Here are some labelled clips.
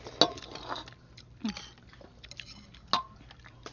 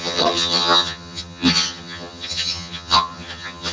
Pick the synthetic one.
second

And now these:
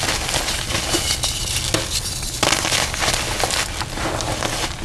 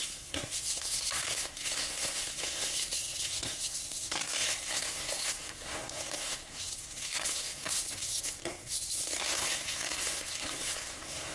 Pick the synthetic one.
second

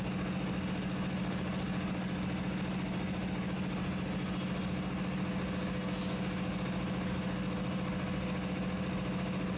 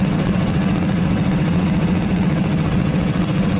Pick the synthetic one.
second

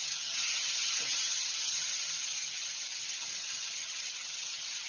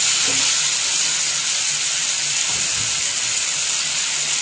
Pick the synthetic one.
first